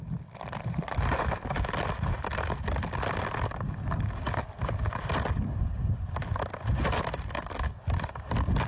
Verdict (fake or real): real